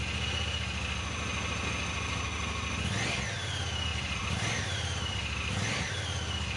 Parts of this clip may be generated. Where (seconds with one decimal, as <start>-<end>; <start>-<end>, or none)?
3.9-5.9